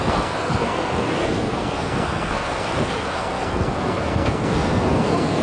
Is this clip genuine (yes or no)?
no